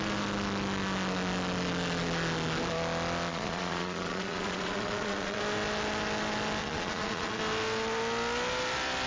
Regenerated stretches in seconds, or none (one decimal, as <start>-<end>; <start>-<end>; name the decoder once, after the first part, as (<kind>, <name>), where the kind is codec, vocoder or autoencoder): 3.3-5.4 (vocoder, Vocos); 6.6-7.4